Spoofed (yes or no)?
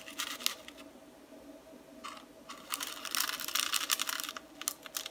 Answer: no